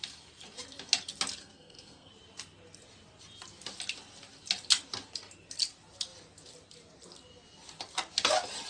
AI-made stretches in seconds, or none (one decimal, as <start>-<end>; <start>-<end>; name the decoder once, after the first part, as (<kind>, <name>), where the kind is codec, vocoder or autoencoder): 1.4-2.1 (codec, SNAC)